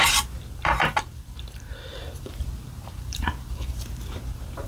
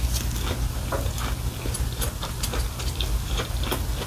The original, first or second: second